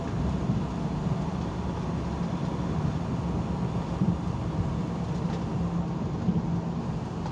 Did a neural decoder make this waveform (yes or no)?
no